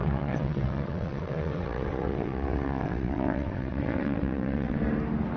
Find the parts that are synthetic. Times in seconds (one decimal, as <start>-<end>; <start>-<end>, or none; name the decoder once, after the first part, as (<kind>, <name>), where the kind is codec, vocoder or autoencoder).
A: 0.0-4.8 (vocoder, WaveNeXt)